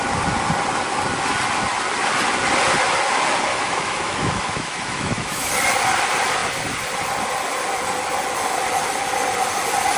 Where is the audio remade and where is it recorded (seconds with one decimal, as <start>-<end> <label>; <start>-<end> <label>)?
0.0-3.5 recorded; 3.5-5.5 remade; 5.5-10.0 recorded